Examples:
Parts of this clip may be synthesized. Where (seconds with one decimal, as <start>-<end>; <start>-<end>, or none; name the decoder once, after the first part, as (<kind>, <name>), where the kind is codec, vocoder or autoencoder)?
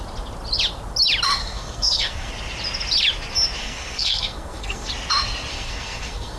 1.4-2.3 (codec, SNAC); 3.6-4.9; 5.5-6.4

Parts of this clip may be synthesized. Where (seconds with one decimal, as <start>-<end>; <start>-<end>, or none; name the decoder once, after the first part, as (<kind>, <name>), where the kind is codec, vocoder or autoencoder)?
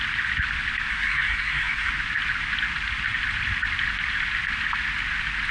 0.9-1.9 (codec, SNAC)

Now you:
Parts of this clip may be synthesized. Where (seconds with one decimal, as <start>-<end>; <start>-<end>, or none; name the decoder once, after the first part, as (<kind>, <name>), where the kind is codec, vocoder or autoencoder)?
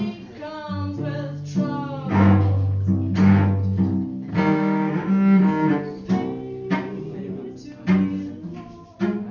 4.3-4.9 (codec, SNAC)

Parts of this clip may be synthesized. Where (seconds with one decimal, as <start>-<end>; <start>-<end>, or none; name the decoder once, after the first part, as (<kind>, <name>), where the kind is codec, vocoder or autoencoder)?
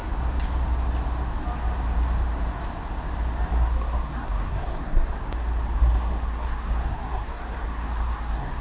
3.5-5.2 (codec, SNAC); 5.8-8.6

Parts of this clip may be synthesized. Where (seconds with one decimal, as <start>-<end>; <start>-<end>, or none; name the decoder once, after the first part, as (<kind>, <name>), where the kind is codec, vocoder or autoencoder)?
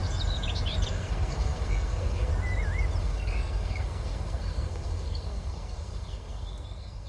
0.9-2.3 (codec, SNAC); 3.0-7.1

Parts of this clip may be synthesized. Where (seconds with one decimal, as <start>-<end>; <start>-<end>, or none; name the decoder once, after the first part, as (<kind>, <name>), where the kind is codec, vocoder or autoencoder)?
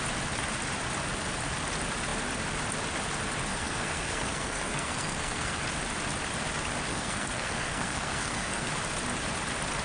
3.5-5.6 (codec, SNAC); 6.9-8.7